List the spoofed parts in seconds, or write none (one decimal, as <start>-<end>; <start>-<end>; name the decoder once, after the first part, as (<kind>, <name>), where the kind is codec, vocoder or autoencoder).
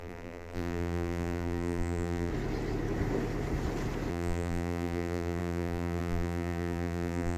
0.0-2.3 (vocoder, BigVGAN v2); 4.1-7.4